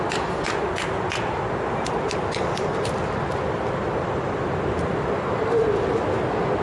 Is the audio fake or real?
real